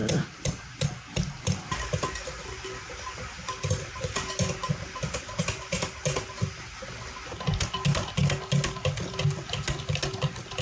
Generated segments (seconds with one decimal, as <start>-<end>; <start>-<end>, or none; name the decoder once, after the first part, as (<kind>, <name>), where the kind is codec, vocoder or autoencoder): none